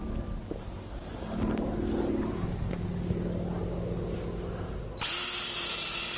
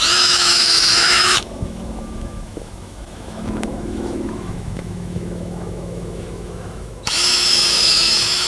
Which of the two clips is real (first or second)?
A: first